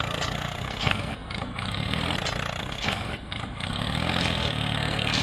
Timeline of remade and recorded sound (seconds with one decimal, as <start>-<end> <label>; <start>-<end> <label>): 0.0-2.0 remade; 2.0-2.6 recorded; 2.6-5.2 remade